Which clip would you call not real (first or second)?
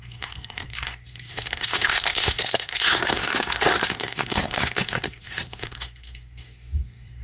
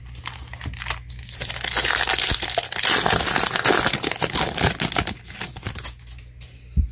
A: first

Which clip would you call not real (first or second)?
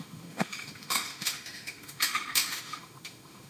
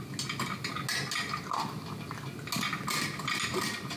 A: first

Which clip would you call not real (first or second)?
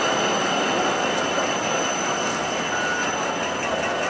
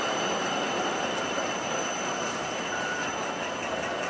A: second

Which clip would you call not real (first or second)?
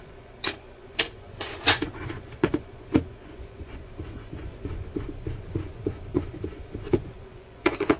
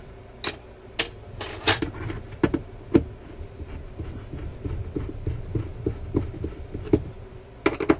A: first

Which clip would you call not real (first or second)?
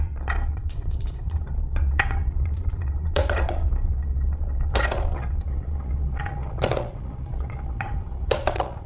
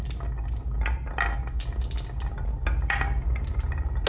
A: first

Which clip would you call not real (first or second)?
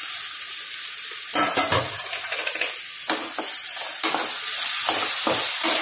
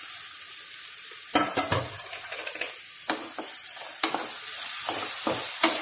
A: second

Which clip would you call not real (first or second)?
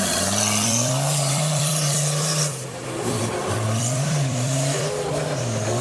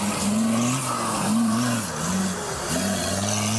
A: first